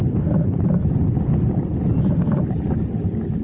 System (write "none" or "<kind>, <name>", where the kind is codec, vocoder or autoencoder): none